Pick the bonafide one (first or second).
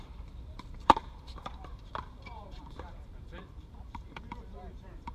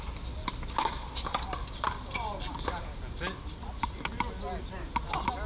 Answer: second